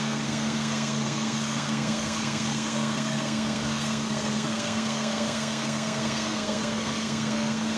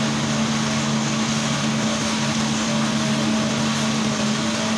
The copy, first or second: first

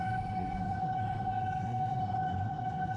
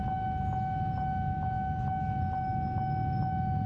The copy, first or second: first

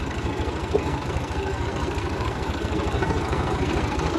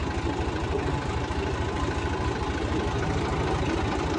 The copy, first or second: first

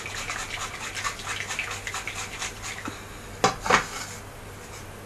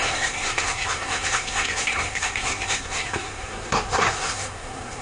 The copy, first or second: second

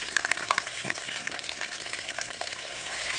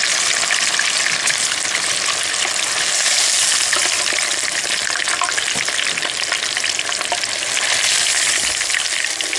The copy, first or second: first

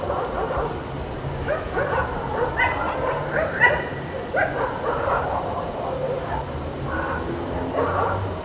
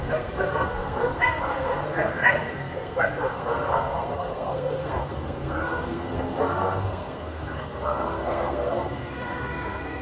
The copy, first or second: second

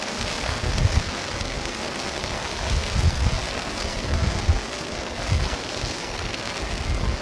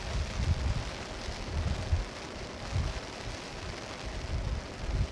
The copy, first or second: first